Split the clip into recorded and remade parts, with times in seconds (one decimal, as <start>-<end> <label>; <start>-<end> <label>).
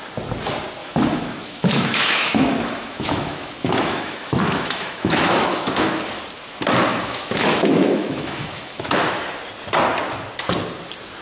0.0-0.8 recorded; 0.8-6.0 remade; 6.0-6.9 recorded; 6.9-9.2 remade; 9.2-11.2 recorded